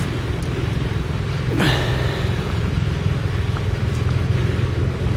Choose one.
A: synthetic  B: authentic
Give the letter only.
A